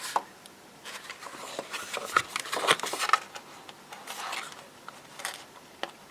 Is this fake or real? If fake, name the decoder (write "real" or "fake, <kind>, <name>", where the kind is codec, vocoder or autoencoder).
real